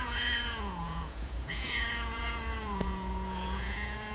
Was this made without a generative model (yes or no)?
no